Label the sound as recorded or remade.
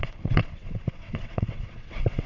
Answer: remade